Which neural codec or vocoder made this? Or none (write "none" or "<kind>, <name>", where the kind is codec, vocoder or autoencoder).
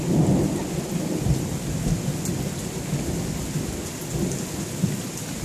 none